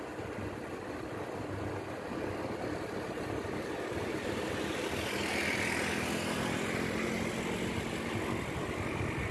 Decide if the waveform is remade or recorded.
recorded